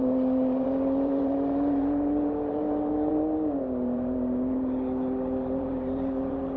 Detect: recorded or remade remade